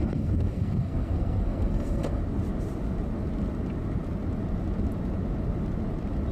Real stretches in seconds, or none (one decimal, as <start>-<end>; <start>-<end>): 2.2-6.3